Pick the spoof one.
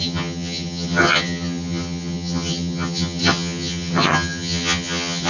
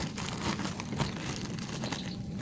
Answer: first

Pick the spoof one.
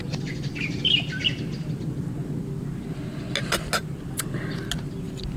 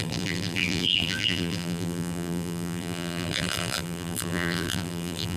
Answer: second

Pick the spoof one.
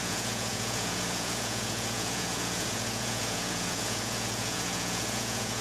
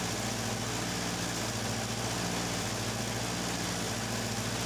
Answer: first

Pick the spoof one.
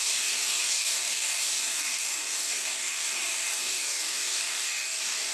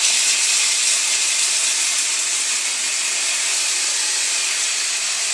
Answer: first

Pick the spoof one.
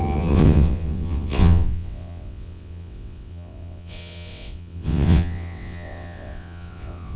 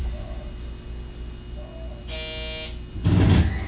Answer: first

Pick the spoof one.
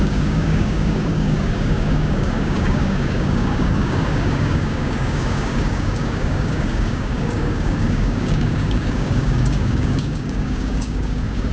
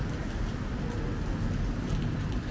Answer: first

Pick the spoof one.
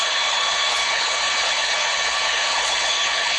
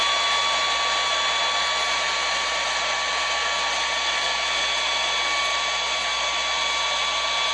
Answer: first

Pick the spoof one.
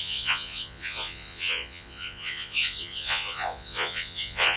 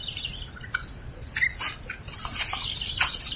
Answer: first